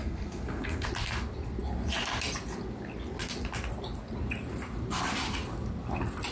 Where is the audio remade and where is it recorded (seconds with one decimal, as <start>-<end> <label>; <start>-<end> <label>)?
0.0-0.9 remade; 0.9-6.3 recorded